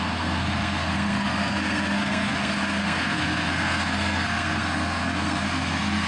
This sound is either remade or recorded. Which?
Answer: remade